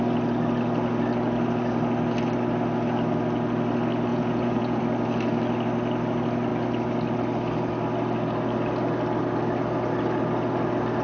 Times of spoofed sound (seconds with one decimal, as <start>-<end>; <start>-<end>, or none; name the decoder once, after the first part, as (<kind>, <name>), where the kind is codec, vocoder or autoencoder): 4.1-4.8 (vocoder, Vocos)